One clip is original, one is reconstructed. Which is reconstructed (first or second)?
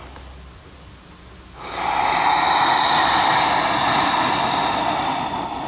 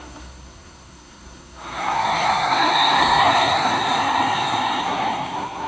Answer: second